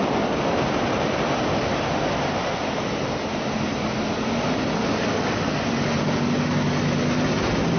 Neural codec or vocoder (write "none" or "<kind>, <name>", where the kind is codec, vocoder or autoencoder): none